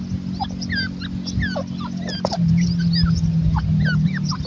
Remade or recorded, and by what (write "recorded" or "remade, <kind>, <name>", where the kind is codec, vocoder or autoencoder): recorded